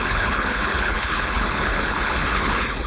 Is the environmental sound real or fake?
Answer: fake